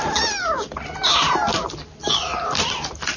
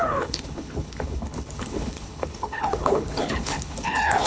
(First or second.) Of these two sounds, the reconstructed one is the second